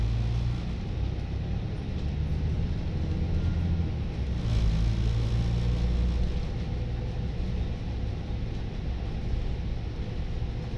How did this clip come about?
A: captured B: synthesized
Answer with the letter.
A